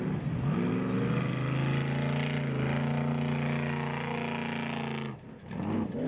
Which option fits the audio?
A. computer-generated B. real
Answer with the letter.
B